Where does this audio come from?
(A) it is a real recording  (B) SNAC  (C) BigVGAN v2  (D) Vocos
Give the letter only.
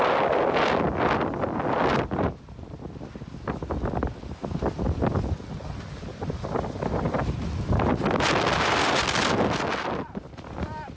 A